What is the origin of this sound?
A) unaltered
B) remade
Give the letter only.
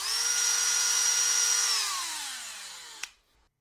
B